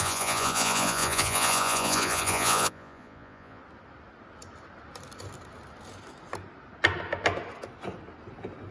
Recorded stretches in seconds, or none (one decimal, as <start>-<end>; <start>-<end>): 3.6-8.7